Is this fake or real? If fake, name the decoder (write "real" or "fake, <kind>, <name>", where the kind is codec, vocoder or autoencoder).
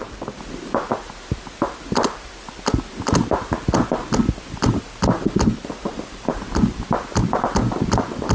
real